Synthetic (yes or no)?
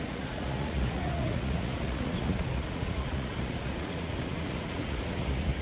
yes